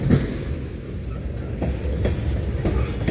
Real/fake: real